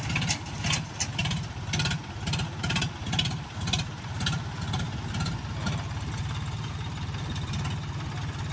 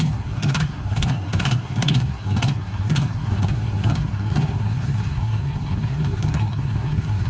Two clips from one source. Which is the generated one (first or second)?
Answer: second